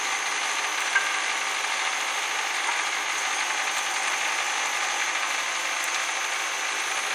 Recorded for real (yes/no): yes